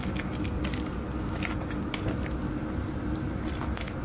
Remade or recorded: recorded